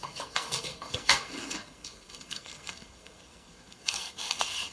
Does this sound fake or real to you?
fake